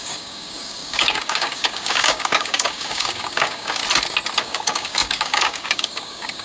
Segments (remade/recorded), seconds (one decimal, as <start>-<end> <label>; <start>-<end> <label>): 0.0-3.8 remade; 3.8-4.4 recorded; 4.4-6.4 remade